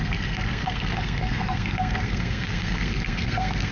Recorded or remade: remade